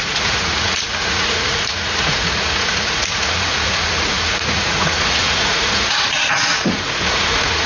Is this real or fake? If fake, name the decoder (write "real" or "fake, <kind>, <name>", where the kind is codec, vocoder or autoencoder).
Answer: fake, vocoder, Vocos